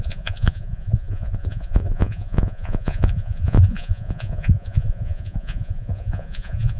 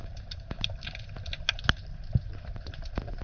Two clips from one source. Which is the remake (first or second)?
first